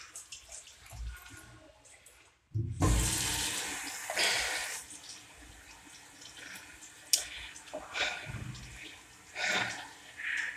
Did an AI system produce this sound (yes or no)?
no